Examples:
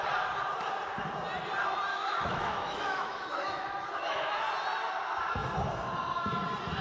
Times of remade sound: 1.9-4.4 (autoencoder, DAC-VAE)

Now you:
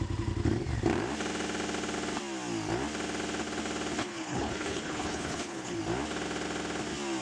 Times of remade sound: 4.0-5.8 (codec, HILCodec)

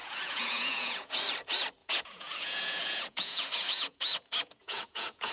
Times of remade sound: 0.0-1.2 (vocoder, Vocos); 1.8-5.3

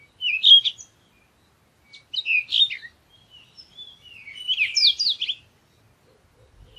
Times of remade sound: none